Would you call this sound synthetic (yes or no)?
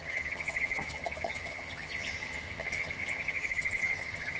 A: yes